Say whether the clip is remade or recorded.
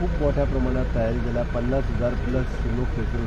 recorded